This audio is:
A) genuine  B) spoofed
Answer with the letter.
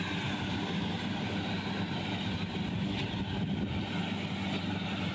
A